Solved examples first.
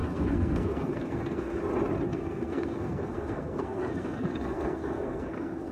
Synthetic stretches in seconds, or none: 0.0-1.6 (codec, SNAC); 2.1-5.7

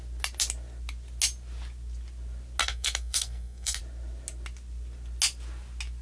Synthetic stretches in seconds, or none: 2.6-3.8 (codec, SNAC)

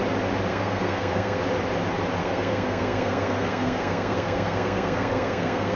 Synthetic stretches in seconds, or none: 0.5-1.4 (codec, SNAC); 2.2-5.8

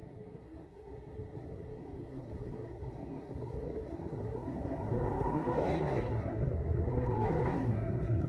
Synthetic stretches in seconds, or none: 0.0-8.3 (codec, SNAC)

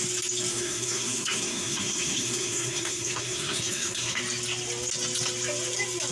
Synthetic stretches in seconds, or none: 0.5-4.2 (codec, SNAC)